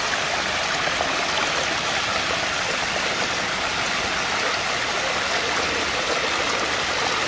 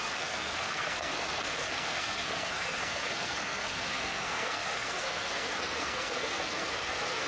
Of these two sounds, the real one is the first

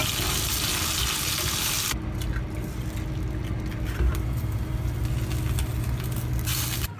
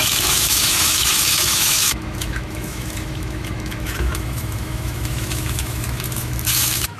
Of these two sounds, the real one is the first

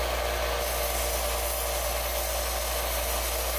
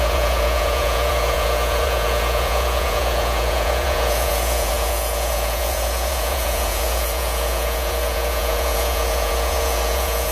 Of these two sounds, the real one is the first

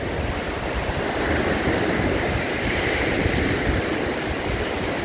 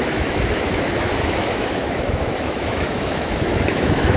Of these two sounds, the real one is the first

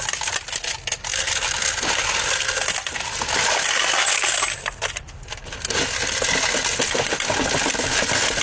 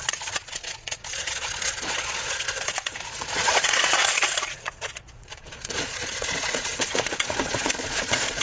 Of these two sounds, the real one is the first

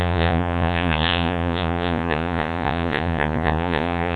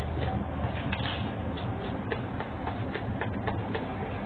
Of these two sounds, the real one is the second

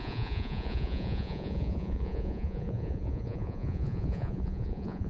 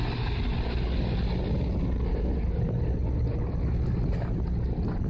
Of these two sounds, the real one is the second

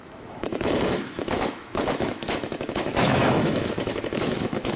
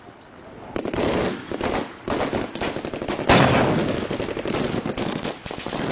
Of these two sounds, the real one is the second